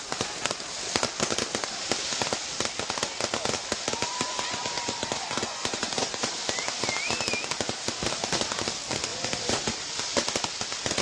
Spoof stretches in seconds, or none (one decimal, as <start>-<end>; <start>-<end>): 3.6-6.2; 9.1-9.7